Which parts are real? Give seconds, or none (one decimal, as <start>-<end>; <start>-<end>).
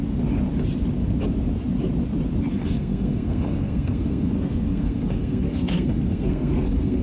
0.0-2.5